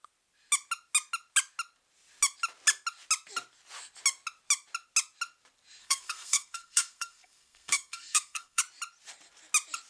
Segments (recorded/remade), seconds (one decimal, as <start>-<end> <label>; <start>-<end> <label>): 0.0-5.8 recorded; 5.8-8.6 remade; 8.6-9.9 recorded